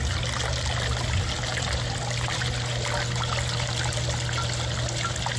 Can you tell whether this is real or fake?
real